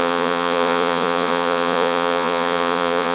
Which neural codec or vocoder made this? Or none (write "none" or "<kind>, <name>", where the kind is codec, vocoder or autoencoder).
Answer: vocoder, Vocos